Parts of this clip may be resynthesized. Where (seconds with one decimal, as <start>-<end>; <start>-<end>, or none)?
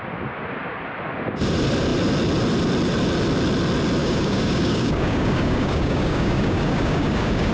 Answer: 4.0-7.5